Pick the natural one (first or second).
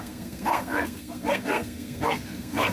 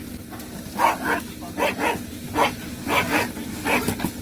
second